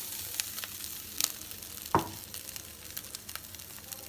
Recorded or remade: recorded